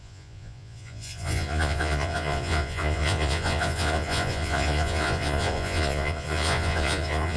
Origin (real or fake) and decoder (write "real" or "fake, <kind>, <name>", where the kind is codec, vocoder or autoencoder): fake, vocoder, Vocos